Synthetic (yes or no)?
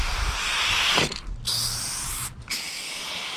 no